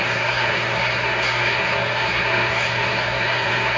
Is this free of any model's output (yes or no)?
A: no